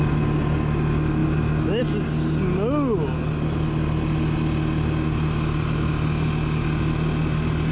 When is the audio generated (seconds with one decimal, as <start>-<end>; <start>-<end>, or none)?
none